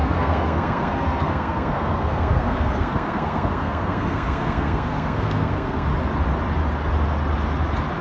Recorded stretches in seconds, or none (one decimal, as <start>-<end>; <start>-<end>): 5.9-8.0